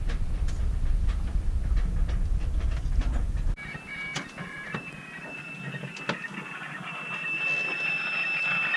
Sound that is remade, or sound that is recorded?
recorded